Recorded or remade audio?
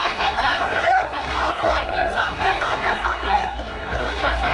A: remade